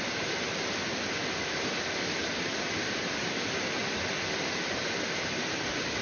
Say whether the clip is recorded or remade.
recorded